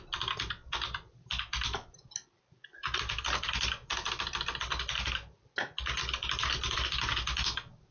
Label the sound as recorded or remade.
recorded